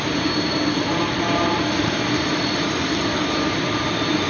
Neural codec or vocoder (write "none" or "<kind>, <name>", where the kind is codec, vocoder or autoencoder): vocoder, BigVGAN v2